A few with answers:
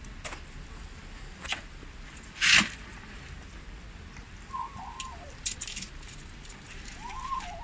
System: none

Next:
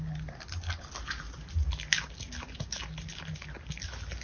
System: none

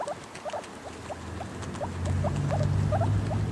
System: none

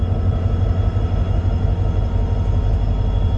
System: none